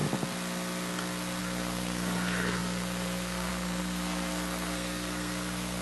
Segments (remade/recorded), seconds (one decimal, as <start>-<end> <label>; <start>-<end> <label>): 0.0-1.4 recorded; 1.4-5.8 remade